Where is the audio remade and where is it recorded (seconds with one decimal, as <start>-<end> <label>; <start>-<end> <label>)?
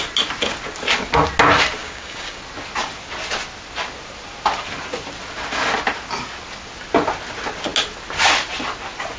0.0-1.8 recorded; 1.8-2.4 remade; 2.4-9.2 recorded